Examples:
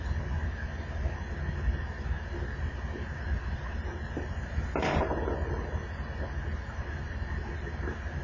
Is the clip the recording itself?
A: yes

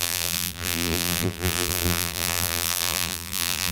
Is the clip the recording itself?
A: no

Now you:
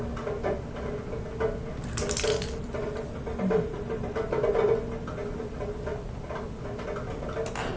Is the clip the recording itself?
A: yes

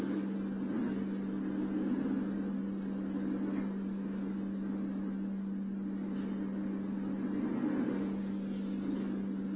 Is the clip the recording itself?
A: yes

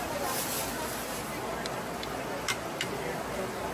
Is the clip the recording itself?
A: yes